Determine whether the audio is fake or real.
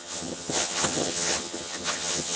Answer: fake